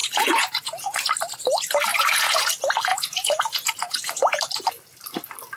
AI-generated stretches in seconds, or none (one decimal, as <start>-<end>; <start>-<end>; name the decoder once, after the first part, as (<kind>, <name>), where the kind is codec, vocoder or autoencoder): 0.0-1.1 (vocoder, Vocos); 1.9-2.5; 2.9-4.4